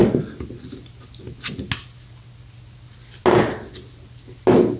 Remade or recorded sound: recorded